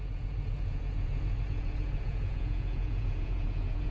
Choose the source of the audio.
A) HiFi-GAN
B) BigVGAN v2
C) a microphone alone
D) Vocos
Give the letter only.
D